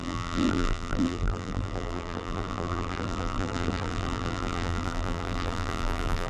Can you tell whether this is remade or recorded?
remade